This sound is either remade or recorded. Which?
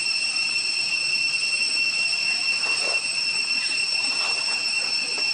recorded